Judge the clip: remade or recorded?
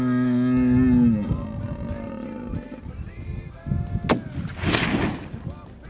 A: recorded